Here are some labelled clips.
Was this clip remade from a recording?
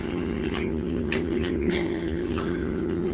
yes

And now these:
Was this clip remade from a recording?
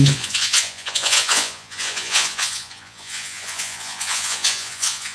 yes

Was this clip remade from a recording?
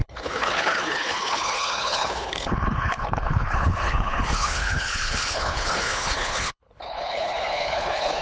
yes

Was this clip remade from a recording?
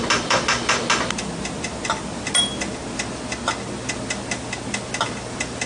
no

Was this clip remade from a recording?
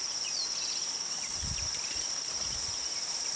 no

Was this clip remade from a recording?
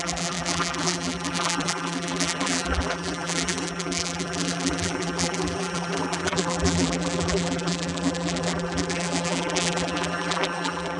yes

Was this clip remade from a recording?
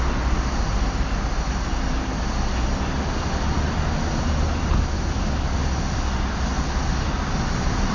no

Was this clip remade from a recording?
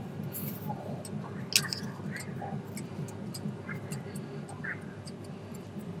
no